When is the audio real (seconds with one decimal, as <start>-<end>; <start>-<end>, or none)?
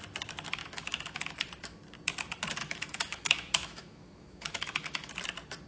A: 0.0-0.6; 1.3-2.6; 5.1-5.7